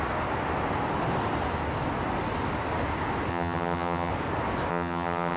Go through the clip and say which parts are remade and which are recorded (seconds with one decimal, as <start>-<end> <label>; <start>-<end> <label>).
0.0-3.3 recorded; 3.3-4.1 remade; 4.1-4.7 recorded; 4.7-5.4 remade